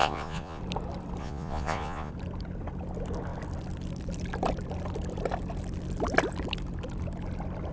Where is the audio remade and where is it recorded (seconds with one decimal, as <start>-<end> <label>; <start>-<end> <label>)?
0.0-0.6 remade; 0.6-1.2 recorded; 1.2-2.1 remade; 2.1-7.7 recorded